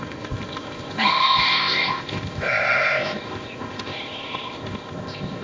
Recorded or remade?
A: remade